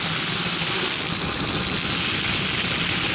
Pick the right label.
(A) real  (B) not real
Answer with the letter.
A